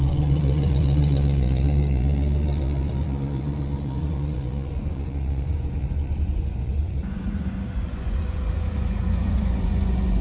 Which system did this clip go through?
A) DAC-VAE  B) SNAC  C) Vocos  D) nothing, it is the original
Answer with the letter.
C